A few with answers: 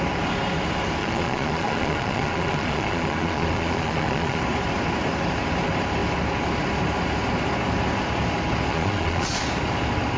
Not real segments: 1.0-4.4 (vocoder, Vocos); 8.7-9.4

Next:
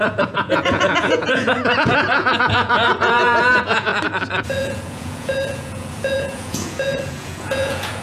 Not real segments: 0.0-3.9 (vocoder, Vocos); 4.4-8.0

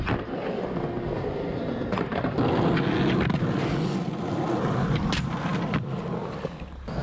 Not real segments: none

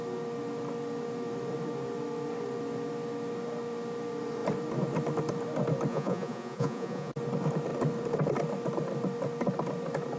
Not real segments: 5.9-7.1 (vocoder, Vocos)

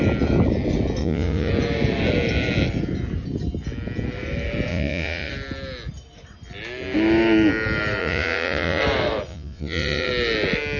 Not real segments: 1.0-1.5 (vocoder, Vocos); 4.7-5.3; 8.0-8.8; 9.3-10.1

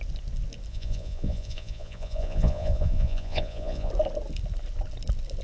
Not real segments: 0.7-3.9 (vocoder, Vocos)

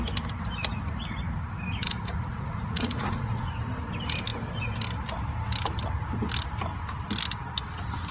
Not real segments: 1.8-3.6 (vocoder, Vocos)